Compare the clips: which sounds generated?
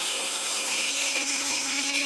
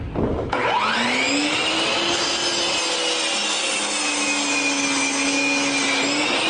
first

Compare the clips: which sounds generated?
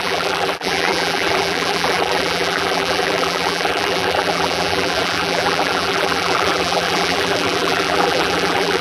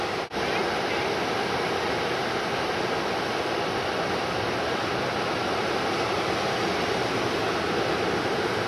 first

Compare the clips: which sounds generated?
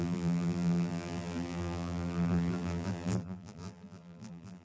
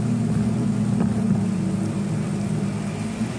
first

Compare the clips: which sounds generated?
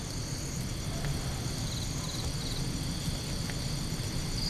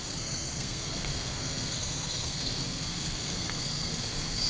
second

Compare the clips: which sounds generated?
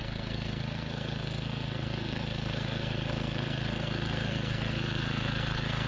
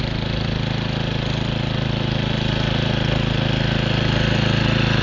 first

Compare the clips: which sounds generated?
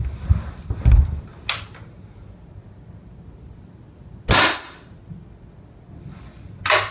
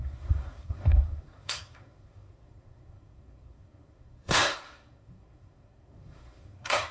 second